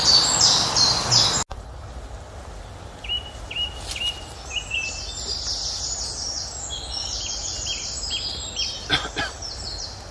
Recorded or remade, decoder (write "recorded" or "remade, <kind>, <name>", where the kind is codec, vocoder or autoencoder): recorded